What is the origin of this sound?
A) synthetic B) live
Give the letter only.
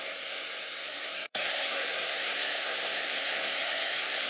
A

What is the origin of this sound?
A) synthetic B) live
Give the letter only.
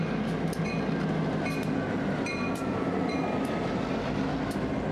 B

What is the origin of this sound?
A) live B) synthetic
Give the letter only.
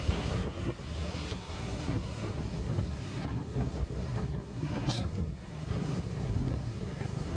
B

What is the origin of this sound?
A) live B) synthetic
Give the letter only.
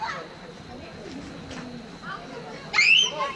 A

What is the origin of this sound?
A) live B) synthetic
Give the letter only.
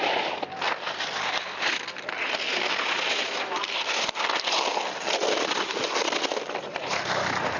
A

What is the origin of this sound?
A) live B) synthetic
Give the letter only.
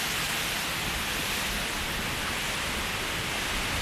A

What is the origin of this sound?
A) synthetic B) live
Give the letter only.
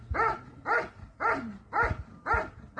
B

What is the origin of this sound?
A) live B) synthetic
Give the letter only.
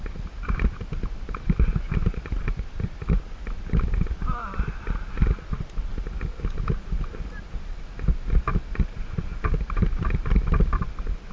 A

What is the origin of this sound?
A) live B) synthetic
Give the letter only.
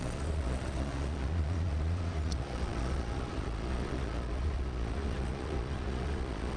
B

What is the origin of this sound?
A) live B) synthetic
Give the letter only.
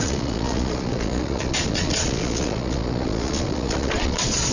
B